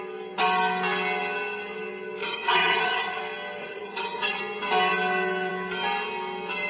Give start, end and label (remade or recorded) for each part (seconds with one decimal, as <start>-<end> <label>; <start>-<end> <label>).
0.0-2.2 recorded; 2.2-3.2 remade; 3.2-3.6 recorded; 3.6-4.4 remade; 4.4-6.7 recorded